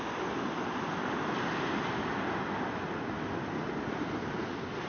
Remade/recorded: recorded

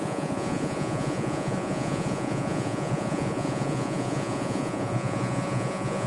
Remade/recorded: remade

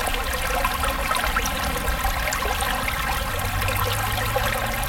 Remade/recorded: recorded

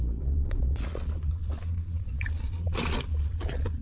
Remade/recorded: remade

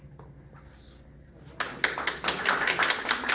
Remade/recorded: recorded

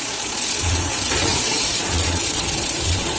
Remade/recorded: remade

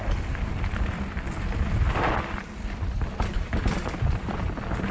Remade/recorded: recorded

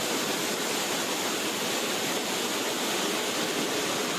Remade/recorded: recorded